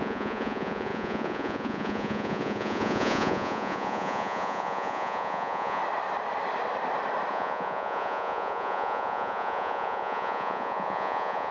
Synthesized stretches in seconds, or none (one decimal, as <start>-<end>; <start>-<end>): 0.0-5.8; 7.3-11.5